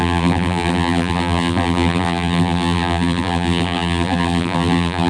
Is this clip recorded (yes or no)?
no